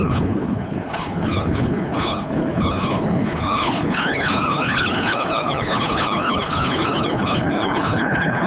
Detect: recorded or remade remade